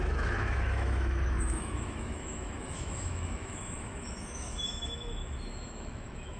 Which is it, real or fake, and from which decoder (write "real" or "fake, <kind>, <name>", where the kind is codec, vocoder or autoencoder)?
fake, autoencoder, DAC-VAE